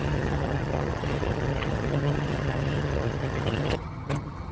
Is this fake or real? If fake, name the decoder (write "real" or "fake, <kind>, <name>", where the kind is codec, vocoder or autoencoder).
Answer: fake, vocoder, HiFi-GAN